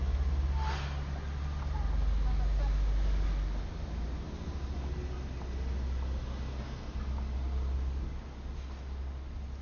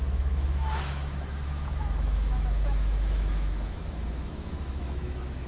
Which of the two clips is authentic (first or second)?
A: first